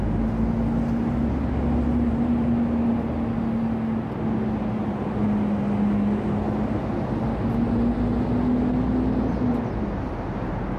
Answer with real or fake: real